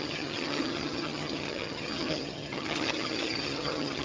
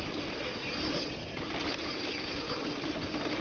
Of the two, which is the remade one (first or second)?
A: first